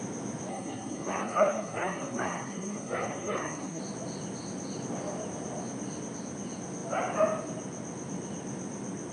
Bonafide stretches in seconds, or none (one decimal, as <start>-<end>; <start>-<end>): 0.0-0.5; 3.8-9.1